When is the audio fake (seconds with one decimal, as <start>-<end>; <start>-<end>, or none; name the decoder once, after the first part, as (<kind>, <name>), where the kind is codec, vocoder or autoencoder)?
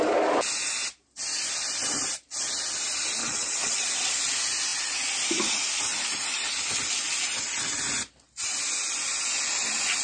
3.2-4.1 (vocoder, WaveNeXt)